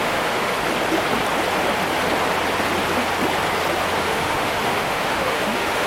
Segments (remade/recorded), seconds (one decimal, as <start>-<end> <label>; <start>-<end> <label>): 0.0-0.5 remade; 0.5-4.0 recorded; 4.0-5.9 remade